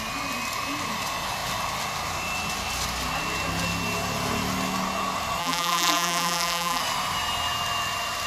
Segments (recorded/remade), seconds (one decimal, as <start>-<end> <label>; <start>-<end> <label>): 0.0-5.4 recorded; 5.4-6.8 remade; 6.8-8.3 recorded